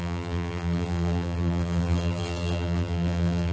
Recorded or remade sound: remade